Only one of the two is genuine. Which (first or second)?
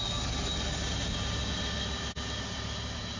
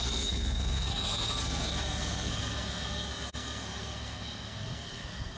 first